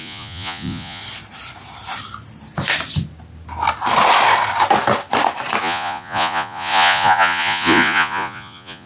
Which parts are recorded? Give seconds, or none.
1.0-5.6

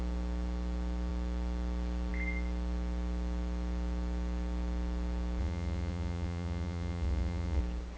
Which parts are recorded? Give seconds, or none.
0.0-5.4; 7.6-8.0

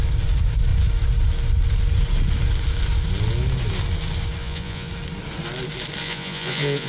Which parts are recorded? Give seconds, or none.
0.0-4.4; 4.9-6.0

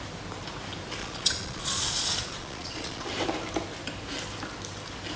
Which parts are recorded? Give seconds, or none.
0.0-1.0; 3.1-5.2